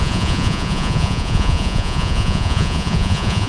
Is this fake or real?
fake